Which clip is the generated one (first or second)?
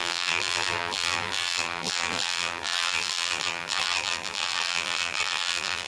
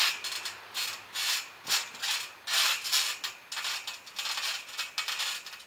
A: first